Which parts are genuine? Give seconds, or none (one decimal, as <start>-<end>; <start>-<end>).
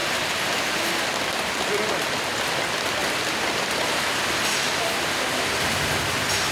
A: 0.0-3.0; 6.0-6.5